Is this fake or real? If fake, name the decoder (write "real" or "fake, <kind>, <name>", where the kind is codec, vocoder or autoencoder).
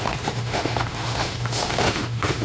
fake, autoencoder, DAC-VAE